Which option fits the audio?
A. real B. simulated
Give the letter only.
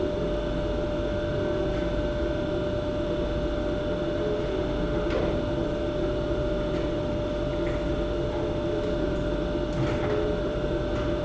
A